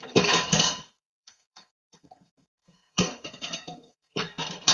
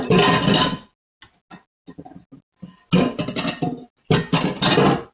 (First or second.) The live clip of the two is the second